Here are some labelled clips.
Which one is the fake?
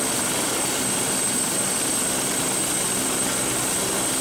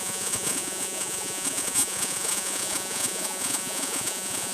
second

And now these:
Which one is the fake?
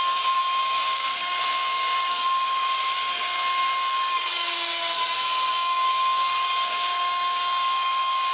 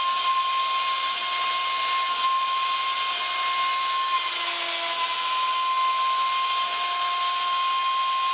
first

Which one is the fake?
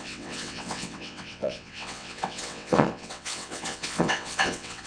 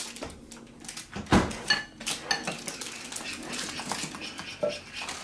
first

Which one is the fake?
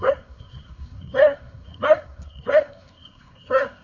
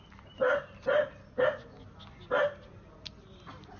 first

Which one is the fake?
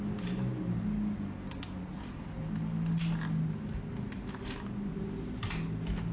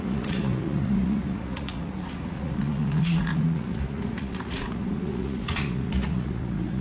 second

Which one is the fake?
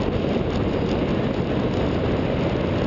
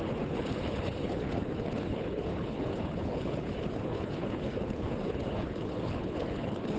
second